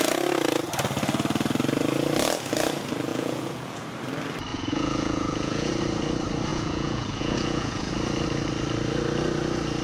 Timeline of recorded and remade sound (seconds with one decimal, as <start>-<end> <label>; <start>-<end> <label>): 0.0-3.1 recorded; 3.1-3.8 remade; 3.8-4.5 recorded; 4.5-5.7 remade; 5.7-6.5 recorded; 6.5-7.9 remade; 7.9-9.8 recorded